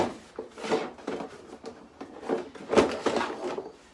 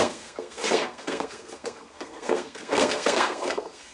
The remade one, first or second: second